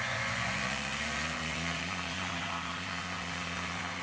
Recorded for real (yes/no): no